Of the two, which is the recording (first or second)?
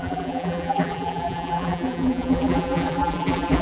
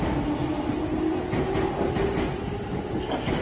second